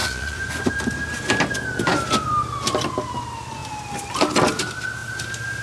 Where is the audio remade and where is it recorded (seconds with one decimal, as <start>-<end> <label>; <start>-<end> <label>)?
0.0-0.7 remade; 0.7-5.6 recorded